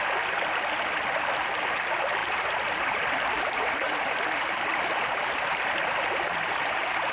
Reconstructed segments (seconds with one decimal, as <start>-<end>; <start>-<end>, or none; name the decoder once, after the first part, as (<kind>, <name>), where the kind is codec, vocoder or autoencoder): 2.2-5.3 (vocoder, BigVGAN v2)